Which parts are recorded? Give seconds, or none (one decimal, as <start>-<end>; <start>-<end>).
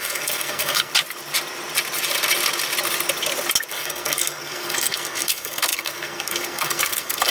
0.9-3.7